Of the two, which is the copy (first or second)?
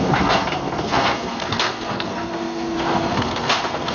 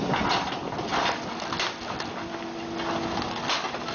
first